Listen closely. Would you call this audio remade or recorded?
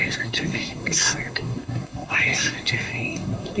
remade